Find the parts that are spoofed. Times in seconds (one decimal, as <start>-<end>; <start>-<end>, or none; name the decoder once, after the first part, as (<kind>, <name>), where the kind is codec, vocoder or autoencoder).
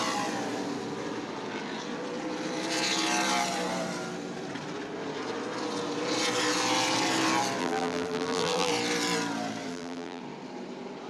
7.6-8.7 (vocoder, BigVGAN v2); 9.7-10.2